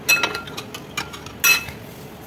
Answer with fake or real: real